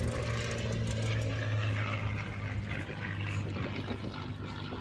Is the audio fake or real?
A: real